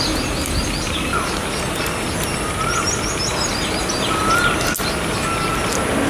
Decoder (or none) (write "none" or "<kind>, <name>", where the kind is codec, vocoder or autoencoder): none